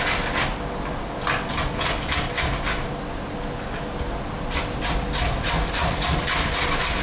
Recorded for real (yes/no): yes